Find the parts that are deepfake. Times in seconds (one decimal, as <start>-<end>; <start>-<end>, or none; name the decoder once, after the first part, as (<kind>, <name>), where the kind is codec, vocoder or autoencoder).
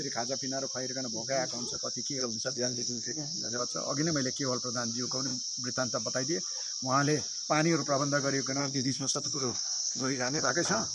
2.2-3.6 (codec, SNAC); 8.6-10.5